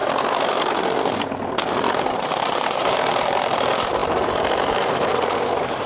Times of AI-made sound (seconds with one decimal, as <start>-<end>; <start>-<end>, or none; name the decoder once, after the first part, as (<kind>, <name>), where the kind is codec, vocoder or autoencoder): 1.9-5.9 (vocoder, BigVGAN v2)